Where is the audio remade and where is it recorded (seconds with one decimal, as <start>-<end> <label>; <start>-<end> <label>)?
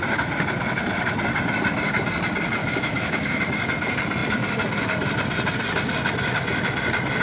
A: 0.0-2.6 recorded; 2.6-3.4 remade; 3.4-7.2 recorded